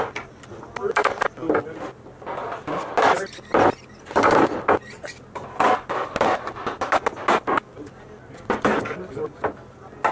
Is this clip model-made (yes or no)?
no